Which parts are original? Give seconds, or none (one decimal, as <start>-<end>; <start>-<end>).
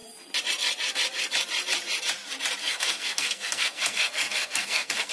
0.0-2.6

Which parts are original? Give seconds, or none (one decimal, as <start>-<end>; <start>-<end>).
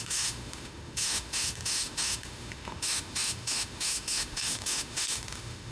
none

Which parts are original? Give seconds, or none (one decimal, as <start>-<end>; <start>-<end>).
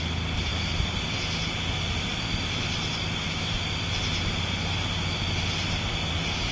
0.0-6.5